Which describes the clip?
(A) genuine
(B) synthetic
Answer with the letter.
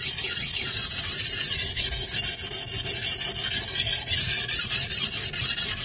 A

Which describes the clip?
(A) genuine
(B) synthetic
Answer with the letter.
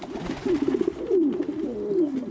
A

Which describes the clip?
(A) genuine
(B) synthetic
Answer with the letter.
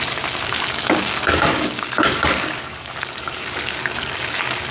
B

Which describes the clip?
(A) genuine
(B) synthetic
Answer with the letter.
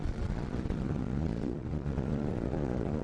B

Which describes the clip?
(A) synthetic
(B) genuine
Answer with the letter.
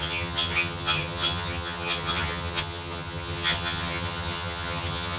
A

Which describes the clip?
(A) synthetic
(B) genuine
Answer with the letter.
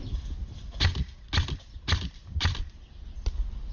B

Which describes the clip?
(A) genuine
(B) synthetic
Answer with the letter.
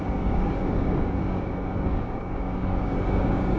B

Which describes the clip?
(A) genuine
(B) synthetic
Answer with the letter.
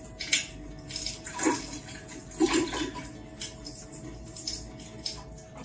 A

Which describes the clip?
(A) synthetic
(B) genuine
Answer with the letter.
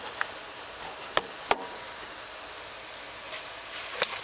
B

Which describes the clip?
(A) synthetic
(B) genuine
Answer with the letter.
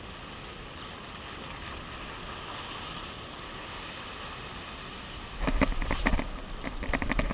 B